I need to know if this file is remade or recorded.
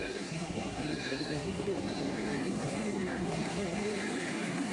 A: remade